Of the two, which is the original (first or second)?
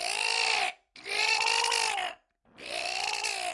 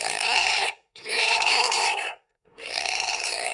first